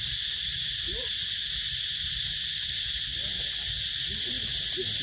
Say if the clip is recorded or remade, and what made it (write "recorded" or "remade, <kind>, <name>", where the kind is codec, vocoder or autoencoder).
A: remade, vocoder, BigVGAN v2